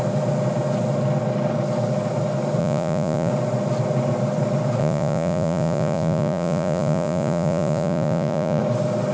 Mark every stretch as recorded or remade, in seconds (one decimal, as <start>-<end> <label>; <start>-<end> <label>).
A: 0.0-2.6 recorded; 2.6-3.3 remade; 3.3-4.8 recorded; 4.8-8.6 remade; 8.6-9.1 recorded